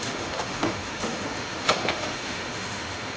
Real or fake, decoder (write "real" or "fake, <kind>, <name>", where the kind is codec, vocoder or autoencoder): fake, autoencoder, DAC-VAE